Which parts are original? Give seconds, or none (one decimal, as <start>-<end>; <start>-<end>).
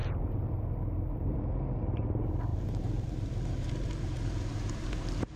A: 0.6-2.5